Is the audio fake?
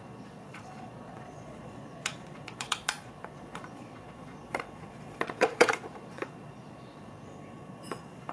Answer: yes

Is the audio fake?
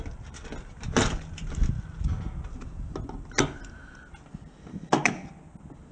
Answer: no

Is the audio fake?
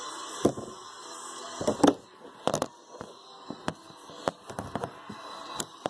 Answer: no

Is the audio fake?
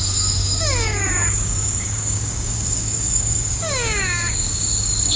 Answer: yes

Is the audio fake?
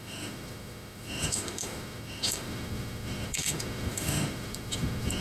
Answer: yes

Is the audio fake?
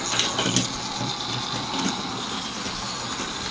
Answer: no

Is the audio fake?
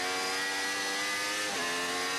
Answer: no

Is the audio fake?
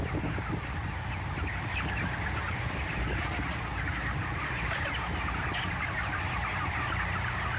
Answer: no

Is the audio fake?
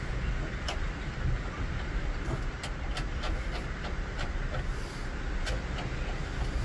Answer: no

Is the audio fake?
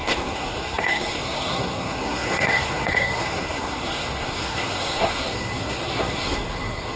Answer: yes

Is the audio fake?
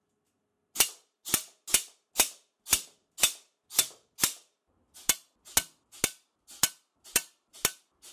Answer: no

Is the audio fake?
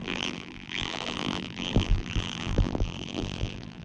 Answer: yes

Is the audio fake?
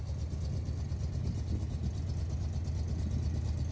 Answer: no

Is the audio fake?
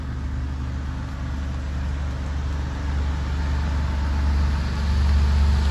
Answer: no